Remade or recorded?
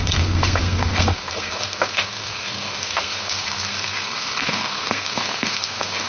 remade